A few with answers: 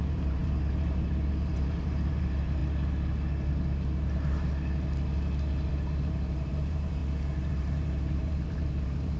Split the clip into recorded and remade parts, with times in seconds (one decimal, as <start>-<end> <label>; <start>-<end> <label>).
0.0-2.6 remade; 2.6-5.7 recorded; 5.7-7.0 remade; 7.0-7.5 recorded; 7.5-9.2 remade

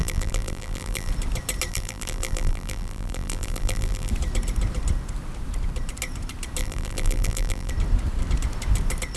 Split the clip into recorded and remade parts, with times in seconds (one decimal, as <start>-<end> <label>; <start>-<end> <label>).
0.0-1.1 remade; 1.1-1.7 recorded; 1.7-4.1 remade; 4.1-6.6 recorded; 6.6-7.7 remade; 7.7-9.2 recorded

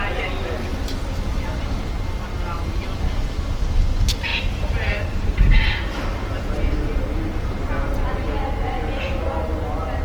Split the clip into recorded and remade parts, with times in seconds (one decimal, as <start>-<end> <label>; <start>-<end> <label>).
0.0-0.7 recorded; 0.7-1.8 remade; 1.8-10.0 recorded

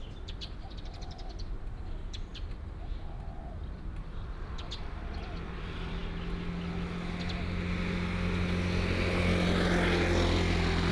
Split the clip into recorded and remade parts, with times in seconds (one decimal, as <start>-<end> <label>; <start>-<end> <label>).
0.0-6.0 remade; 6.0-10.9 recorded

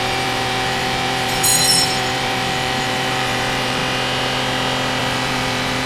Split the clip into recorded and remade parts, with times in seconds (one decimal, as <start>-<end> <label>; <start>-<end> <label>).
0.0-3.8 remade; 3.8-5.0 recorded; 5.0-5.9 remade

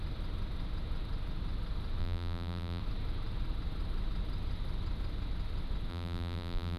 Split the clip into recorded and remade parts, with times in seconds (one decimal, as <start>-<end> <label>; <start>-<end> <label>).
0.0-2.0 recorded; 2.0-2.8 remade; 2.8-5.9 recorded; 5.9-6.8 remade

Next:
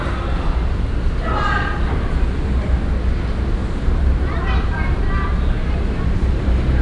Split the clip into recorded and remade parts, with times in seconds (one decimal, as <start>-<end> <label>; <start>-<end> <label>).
0.0-3.6 recorded; 3.6-6.8 remade

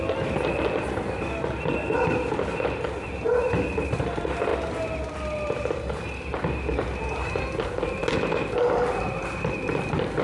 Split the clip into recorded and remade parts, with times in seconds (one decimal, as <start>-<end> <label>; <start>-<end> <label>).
0.0-10.2 recorded